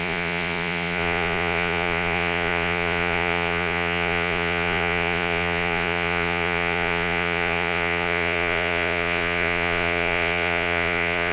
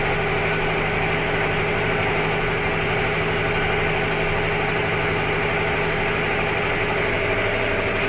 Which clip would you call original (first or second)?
second